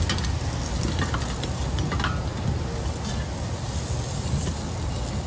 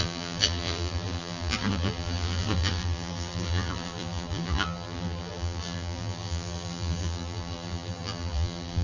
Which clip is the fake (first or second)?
second